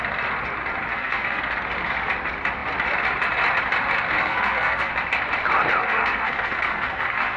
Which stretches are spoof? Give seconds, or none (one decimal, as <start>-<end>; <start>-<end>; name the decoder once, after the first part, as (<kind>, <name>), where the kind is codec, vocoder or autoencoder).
0.9-1.4 (codec, SNAC); 4.2-4.9; 5.8-7.4

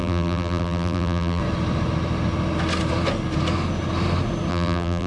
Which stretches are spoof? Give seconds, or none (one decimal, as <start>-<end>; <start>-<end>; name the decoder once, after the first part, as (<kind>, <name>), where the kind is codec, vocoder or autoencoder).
0.0-1.4 (vocoder, BigVGAN v2); 4.5-5.1

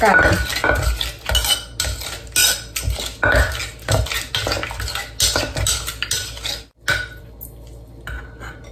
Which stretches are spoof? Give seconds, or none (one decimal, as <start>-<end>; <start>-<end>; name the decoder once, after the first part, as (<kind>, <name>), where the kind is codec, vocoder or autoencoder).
none

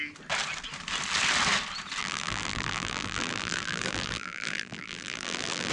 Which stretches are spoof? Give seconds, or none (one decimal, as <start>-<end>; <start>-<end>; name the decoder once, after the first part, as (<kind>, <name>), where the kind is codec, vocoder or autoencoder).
2.0-5.7 (vocoder, BigVGAN v2)

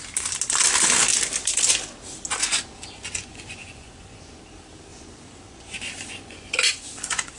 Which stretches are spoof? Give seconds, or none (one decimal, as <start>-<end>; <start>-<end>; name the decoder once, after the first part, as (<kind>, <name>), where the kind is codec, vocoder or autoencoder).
2.4-4.4 (vocoder, Vocos); 4.9-7.4

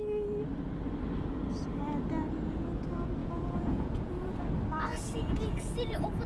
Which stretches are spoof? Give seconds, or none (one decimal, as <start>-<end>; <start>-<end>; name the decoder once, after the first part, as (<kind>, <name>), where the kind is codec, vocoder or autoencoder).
3.2-4.4 (vocoder, Vocos); 4.9-6.3

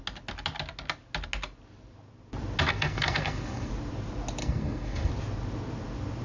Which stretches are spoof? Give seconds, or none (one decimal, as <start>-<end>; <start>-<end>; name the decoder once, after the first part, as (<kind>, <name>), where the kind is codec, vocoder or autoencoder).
2.7-3.7 (codec, SNAC); 4.4-5.1